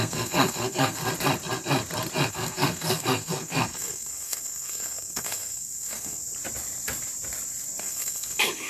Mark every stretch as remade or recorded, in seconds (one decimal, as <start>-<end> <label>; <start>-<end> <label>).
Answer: 0.0-1.0 remade; 1.0-2.3 recorded; 2.3-6.2 remade; 6.2-7.8 recorded; 7.8-8.7 remade